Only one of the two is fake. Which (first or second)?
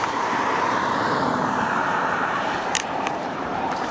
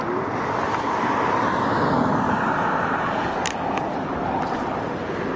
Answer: first